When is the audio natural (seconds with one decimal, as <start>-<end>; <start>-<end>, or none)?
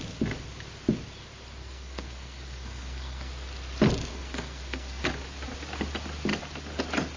0.0-1.6; 3.3-4.1; 5.0-7.2